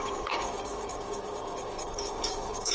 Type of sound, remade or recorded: remade